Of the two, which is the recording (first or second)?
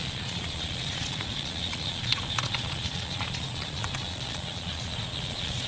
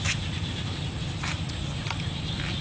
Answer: second